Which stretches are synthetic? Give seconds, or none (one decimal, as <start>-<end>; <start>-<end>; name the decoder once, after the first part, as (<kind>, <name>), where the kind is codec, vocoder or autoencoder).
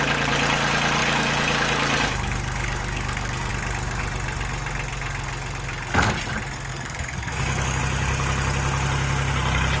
1.0-3.5 (codec, DAC); 6.7-7.8